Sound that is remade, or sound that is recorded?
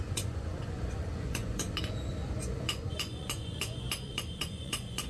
remade